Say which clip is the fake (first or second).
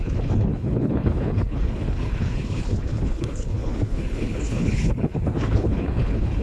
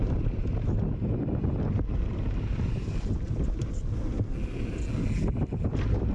first